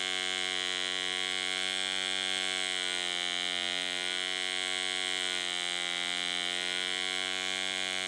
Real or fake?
real